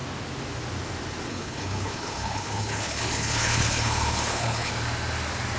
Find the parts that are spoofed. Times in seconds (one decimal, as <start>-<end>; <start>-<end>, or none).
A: 1.3-4.7